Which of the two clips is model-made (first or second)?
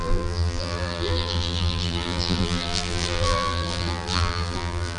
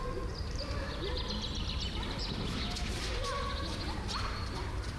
first